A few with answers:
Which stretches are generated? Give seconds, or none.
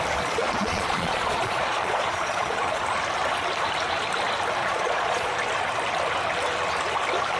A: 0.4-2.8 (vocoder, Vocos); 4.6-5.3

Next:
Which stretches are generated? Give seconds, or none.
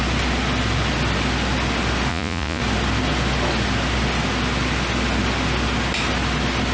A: 2.1-2.6 (vocoder, Vocos)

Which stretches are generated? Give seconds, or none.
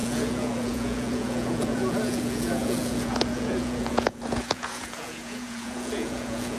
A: 0.0-6.6 (vocoder, Vocos)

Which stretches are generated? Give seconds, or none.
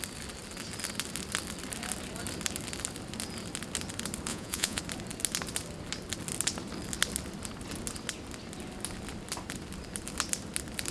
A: 4.3-4.8 (vocoder, Vocos)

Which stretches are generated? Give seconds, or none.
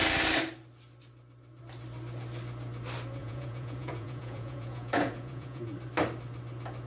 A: 3.2-5.6 (vocoder, Vocos)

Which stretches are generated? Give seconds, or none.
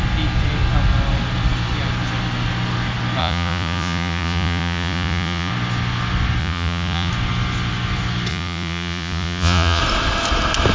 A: 3.2-5.5 (vocoder, Vocos); 6.4-7.1; 8.3-9.8